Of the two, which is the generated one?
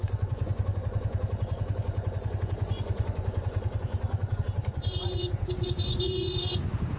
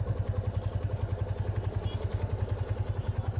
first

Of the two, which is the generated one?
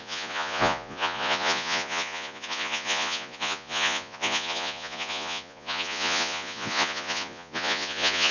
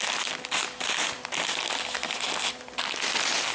first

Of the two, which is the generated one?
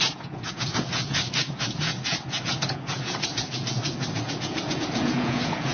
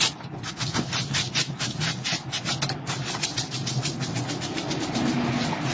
first